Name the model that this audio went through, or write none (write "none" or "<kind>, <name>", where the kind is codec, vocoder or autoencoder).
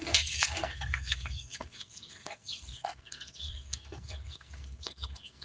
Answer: codec, SNAC